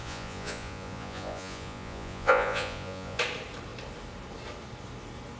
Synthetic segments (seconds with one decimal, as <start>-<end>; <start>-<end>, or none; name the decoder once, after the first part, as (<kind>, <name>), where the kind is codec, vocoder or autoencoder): 0.0-3.2 (vocoder, Vocos)